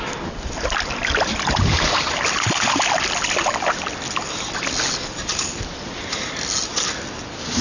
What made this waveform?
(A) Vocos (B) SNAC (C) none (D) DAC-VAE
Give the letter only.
C